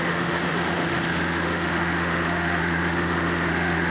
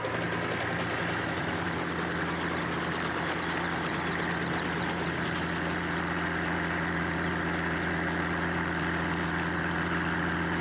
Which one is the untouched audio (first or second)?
second